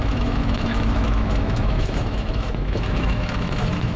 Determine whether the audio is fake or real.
fake